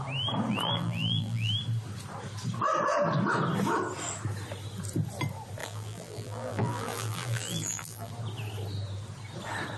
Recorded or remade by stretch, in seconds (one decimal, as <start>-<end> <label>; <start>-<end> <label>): 0.0-0.5 recorded; 0.5-1.5 remade; 1.5-5.6 recorded; 5.6-8.1 remade; 8.1-9.8 recorded